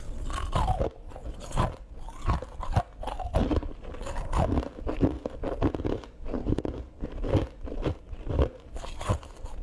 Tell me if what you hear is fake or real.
real